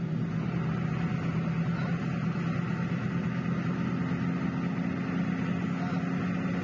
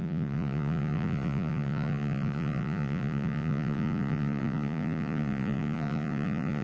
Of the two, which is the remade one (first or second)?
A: second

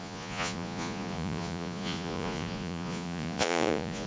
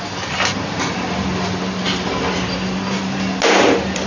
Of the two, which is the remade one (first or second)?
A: first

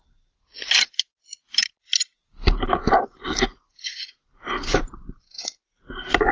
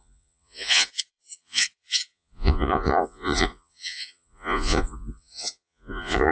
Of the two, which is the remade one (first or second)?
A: second